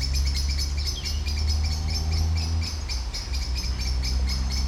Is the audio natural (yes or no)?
yes